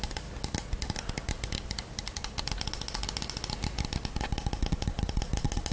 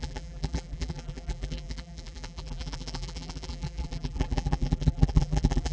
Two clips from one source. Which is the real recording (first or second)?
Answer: first